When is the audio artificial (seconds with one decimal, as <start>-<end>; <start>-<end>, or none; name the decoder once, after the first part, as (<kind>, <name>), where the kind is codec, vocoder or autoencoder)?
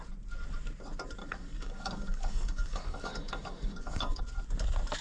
1.2-4.2 (codec, DAC)